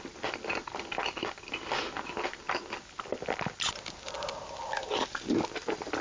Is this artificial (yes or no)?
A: no